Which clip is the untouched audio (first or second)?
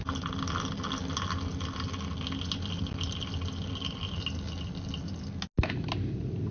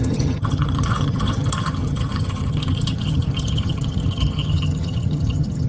first